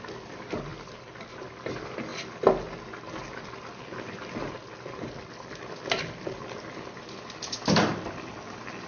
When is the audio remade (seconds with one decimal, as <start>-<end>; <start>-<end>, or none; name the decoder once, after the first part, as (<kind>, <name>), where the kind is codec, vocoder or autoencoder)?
none